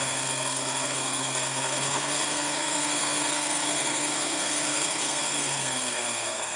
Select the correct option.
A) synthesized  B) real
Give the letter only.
A